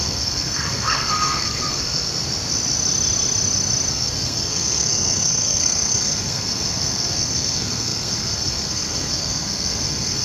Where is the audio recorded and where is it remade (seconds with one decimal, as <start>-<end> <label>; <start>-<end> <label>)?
0.0-2.1 remade; 2.1-3.9 recorded; 3.9-10.2 remade